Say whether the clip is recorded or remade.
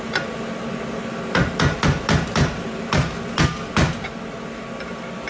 recorded